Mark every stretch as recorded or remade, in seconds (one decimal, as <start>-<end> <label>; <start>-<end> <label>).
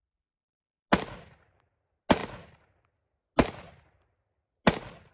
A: 0.0-5.1 recorded